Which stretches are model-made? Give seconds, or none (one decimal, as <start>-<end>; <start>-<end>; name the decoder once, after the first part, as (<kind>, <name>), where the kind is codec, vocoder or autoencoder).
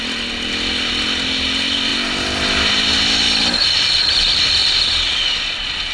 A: 1.9-2.7 (vocoder, BigVGAN v2)